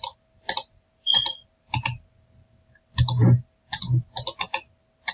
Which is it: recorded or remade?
recorded